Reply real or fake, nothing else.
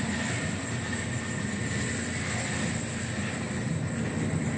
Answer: real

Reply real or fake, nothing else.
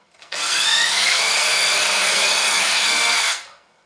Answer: fake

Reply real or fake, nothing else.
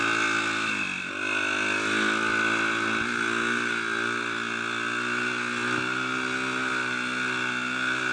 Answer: real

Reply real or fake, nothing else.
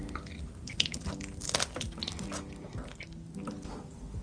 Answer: real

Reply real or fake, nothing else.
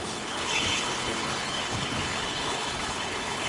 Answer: fake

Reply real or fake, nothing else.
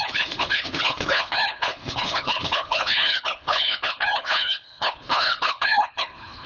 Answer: fake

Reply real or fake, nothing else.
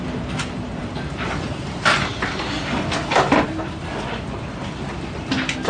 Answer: fake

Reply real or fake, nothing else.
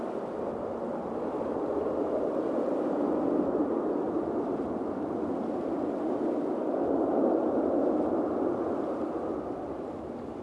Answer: real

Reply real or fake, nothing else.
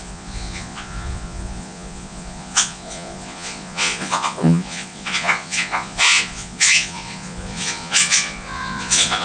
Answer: fake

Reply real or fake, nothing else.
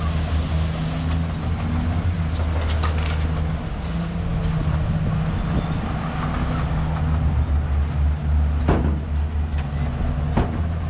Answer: real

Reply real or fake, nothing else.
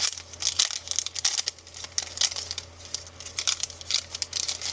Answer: real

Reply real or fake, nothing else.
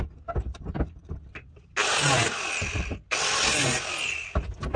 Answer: real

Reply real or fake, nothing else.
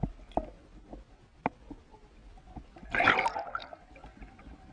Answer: real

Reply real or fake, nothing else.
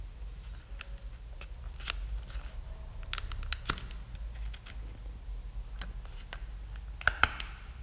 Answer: real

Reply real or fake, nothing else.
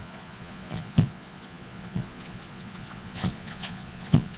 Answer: fake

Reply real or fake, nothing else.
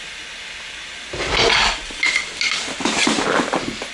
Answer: real